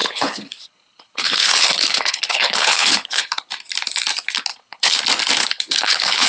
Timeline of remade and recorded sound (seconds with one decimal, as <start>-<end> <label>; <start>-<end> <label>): 0.0-3.5 remade; 3.5-4.5 recorded; 4.5-5.0 remade; 5.0-5.4 recorded; 5.4-6.3 remade